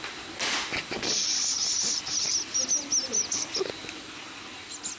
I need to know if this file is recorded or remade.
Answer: recorded